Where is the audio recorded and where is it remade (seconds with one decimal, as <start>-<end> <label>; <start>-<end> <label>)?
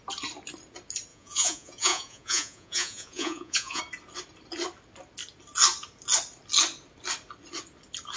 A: 0.0-1.1 recorded; 1.1-3.8 remade; 3.8-8.2 recorded